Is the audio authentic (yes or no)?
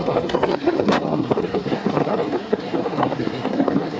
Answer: no